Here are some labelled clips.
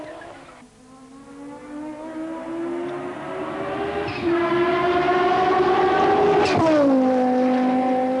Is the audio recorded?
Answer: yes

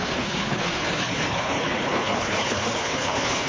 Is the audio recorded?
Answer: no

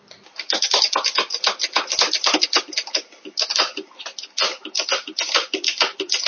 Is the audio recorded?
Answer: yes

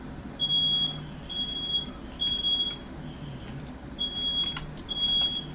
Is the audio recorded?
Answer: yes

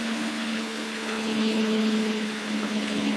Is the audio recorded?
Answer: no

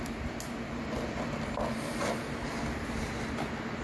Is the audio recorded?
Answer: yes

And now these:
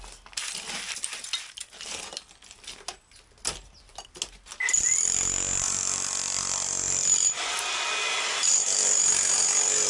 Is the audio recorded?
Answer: yes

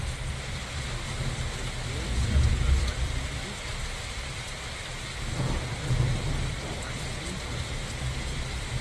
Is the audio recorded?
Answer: yes